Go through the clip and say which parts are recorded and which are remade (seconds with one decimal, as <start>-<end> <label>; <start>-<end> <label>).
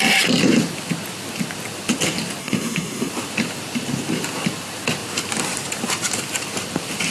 0.0-2.4 recorded; 2.4-3.1 remade; 3.1-7.1 recorded